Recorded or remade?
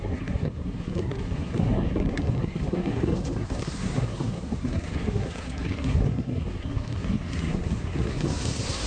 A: remade